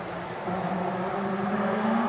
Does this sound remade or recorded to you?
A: remade